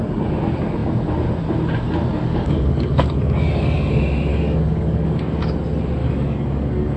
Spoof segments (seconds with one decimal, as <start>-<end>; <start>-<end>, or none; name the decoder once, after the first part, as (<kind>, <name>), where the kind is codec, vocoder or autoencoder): 2.1-3.9 (codec, DAC); 4.3-5.5; 6.0-7.0